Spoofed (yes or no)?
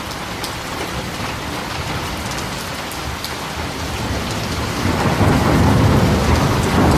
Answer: no